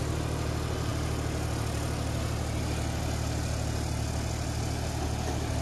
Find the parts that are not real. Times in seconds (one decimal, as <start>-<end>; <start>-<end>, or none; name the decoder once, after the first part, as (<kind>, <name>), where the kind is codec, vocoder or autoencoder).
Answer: none